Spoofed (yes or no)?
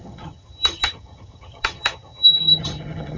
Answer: yes